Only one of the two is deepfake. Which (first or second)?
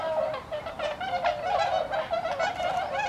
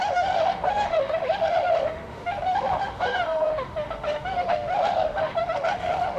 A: second